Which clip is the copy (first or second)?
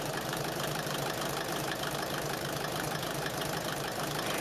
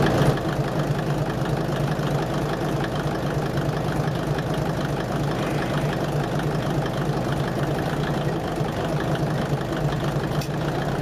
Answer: first